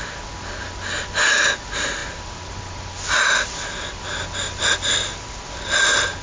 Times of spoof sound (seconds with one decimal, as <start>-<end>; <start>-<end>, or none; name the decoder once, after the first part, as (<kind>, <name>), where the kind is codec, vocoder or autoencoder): none